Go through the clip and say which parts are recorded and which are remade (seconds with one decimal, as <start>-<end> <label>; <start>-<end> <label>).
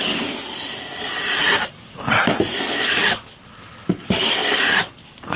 0.0-1.4 recorded; 1.4-1.9 remade; 1.9-5.4 recorded